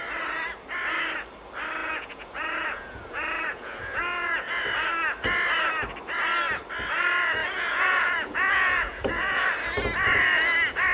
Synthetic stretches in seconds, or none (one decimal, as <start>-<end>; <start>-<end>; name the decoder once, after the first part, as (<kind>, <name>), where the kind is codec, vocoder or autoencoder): 1.8-4.6 (vocoder, Vocos); 7.4-9.4